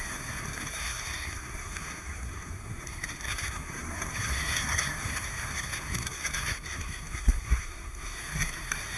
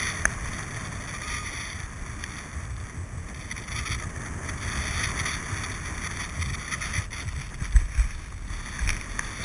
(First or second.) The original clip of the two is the second